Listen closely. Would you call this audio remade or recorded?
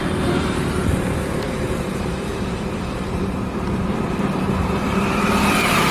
remade